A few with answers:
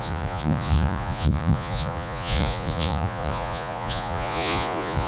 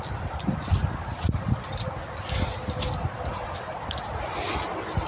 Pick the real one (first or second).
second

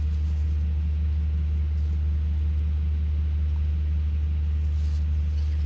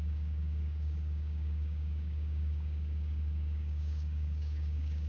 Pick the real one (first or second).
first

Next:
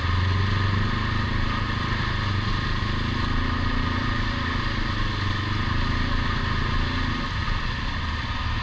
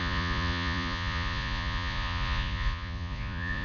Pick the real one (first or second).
first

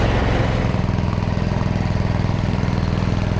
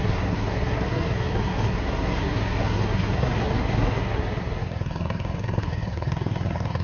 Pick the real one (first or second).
first